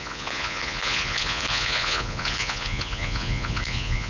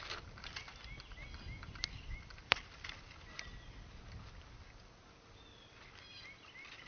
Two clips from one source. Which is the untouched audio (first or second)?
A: second